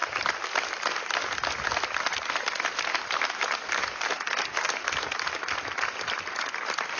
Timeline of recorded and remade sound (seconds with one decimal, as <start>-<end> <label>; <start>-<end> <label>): 0.0-7.0 recorded